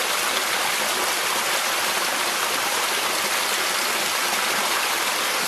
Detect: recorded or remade recorded